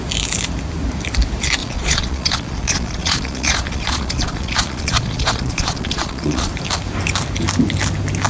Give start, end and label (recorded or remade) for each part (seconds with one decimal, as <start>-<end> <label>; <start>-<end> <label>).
0.0-1.6 recorded; 1.6-6.5 remade; 6.5-8.3 recorded